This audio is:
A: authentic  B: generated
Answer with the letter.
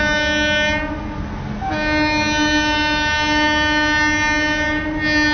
A